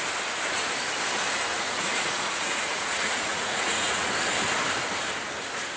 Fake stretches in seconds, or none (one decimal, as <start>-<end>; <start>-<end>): 1.5-4.1